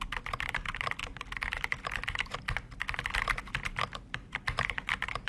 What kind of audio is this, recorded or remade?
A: recorded